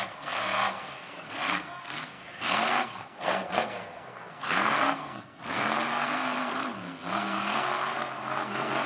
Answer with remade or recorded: remade